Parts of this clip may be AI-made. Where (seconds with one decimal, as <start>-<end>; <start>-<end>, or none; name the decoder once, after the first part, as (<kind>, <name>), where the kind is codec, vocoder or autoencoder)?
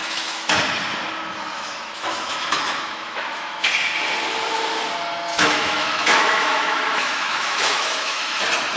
0.0-0.6 (autoencoder, DAC-VAE); 1.5-3.7; 5.3-8.4